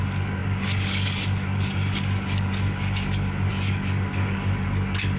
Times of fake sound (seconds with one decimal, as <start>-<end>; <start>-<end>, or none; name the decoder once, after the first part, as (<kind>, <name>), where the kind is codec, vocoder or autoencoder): 0.0-5.2 (codec, DAC)